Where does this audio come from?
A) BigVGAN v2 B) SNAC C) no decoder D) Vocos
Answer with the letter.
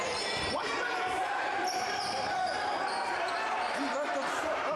A